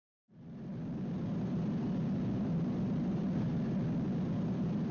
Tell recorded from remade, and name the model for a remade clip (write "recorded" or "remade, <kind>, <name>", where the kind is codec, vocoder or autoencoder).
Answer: recorded